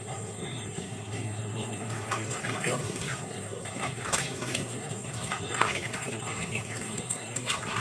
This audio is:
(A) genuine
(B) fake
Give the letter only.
B